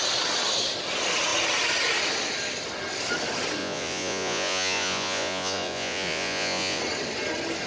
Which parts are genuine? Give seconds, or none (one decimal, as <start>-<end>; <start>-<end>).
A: 0.0-3.6; 6.8-7.7